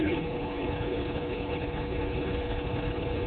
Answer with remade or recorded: remade